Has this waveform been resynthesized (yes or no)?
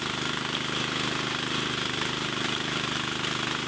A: no